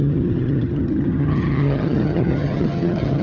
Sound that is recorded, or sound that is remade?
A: remade